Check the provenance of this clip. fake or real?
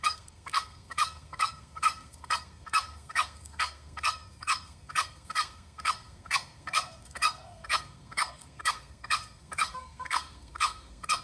fake